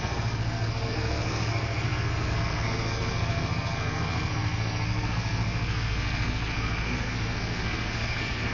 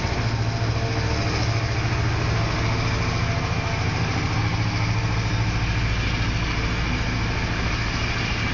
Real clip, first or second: second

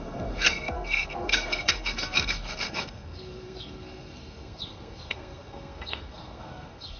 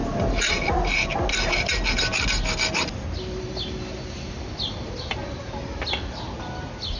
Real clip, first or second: second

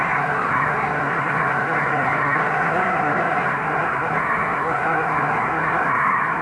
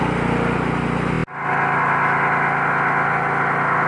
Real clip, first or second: second